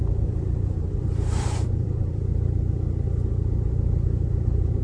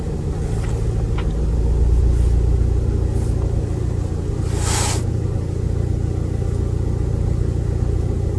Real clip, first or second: second